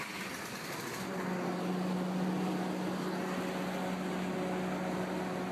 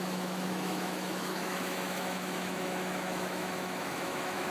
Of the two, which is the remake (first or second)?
second